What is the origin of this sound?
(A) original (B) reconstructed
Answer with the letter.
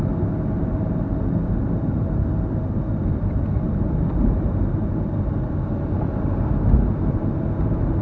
A